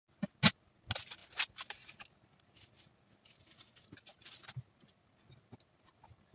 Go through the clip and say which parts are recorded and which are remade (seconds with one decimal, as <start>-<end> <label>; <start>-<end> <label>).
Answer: 0.0-6.3 recorded